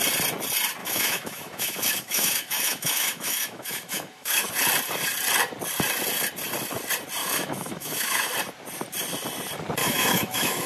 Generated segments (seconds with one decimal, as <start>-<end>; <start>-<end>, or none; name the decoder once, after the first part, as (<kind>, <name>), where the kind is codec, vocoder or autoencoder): 0.8-4.5 (autoencoder, DAC-VAE); 7.2-8.3; 9.8-10.7